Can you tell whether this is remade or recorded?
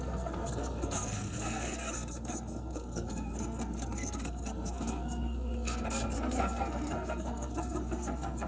remade